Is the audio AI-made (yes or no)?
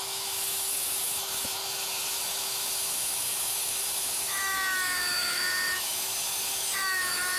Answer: yes